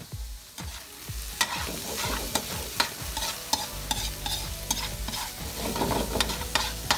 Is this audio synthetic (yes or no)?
no